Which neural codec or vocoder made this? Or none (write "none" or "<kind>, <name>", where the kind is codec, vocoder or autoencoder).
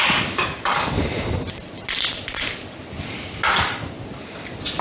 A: none